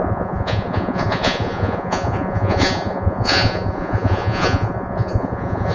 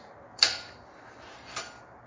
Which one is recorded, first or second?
second